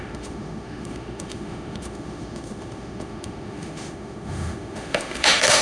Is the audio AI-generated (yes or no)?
yes